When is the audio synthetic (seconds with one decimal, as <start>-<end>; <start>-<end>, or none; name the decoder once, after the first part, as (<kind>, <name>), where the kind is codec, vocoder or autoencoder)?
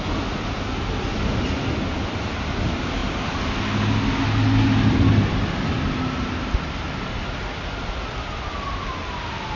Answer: none